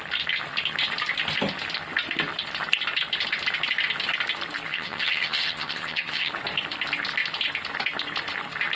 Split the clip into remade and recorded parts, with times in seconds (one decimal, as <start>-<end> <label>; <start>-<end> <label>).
0.0-4.7 recorded; 4.7-6.3 remade; 6.3-8.8 recorded